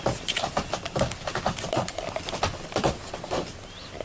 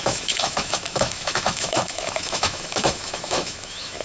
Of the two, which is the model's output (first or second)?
second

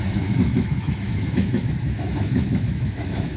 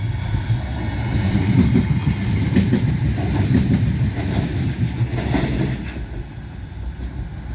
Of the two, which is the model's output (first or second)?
first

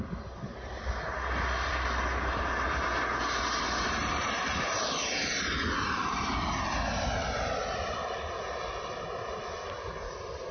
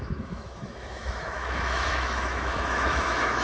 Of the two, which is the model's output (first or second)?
second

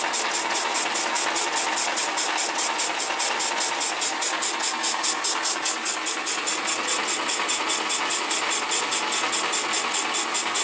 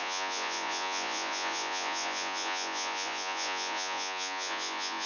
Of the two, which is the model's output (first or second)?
second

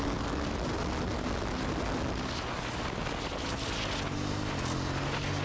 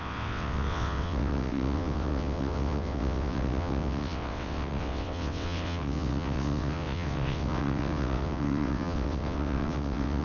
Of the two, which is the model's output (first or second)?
second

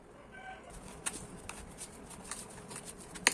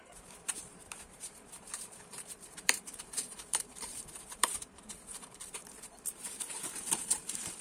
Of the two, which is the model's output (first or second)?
second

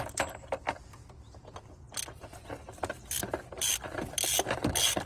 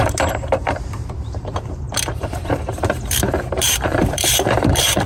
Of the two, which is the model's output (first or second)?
second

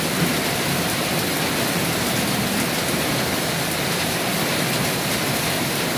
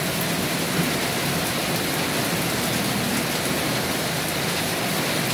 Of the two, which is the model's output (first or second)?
first